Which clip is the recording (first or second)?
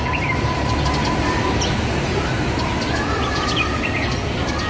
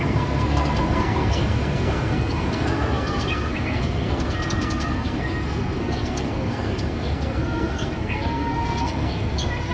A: first